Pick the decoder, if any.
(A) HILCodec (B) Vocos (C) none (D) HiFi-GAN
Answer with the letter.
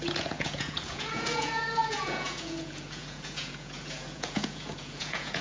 B